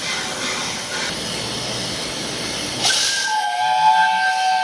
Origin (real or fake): real